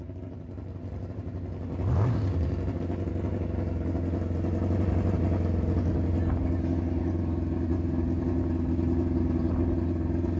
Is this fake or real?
real